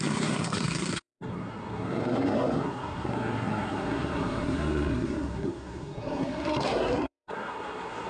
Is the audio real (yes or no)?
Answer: no